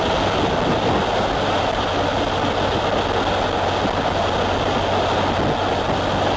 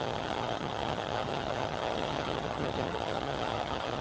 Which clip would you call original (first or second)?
first